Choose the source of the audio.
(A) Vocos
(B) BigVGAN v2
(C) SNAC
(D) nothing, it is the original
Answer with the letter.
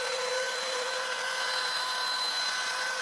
A